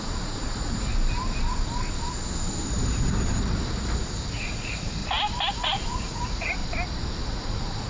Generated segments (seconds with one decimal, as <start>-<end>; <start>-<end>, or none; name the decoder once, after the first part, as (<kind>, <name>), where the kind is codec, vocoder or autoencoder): 0.0-0.9 (vocoder, Vocos); 4.3-5.0; 5.5-6.6; 7.1-7.9